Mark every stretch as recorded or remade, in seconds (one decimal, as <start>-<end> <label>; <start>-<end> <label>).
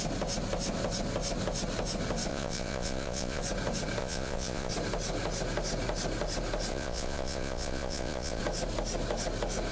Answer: 0.0-2.3 recorded; 2.3-3.4 remade; 3.4-4.0 recorded; 4.0-4.7 remade; 4.7-6.7 recorded; 6.7-8.4 remade; 8.4-9.7 recorded